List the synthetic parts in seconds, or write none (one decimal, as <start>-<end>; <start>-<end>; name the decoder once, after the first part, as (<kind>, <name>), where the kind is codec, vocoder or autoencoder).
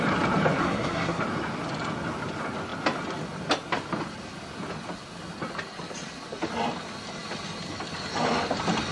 0.6-1.2 (codec, SNAC)